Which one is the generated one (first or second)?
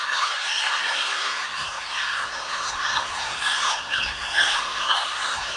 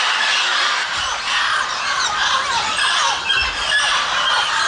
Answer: first